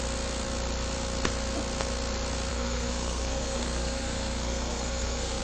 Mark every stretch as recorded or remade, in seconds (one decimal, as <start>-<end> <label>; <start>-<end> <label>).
0.0-2.5 recorded; 2.5-5.4 remade